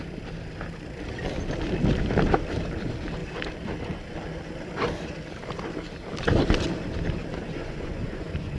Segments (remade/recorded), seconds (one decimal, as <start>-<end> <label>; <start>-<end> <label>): 0.0-7.3 recorded; 7.3-8.6 remade